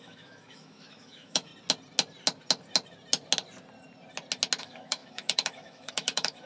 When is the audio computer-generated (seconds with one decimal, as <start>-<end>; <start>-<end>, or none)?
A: 0.0-1.5; 4.6-6.5